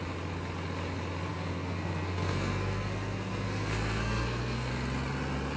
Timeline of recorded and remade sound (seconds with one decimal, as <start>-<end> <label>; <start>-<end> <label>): 0.0-1.3 recorded; 1.3-4.7 remade; 4.7-5.6 recorded